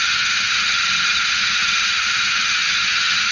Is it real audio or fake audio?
fake